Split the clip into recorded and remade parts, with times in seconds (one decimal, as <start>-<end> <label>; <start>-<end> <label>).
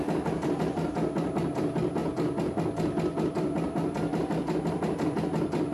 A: 0.0-5.7 recorded